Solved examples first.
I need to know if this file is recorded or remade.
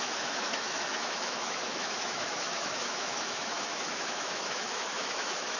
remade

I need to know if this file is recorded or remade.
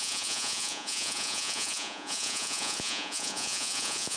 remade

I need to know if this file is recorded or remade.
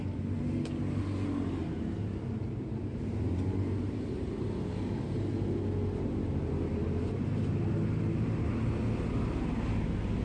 recorded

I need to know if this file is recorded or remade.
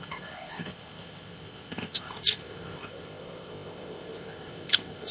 remade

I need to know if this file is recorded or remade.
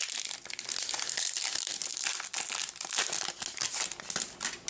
recorded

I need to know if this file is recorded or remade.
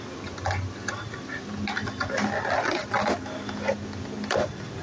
recorded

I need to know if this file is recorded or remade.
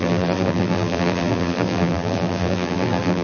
remade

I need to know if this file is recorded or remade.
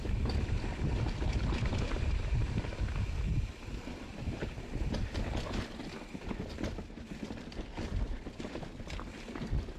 recorded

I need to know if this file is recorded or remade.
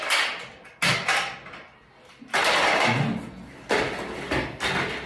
recorded